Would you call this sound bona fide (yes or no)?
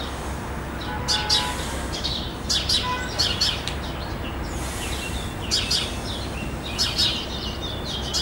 yes